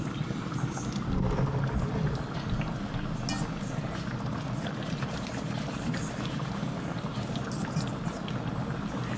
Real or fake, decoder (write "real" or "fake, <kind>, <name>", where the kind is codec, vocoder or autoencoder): real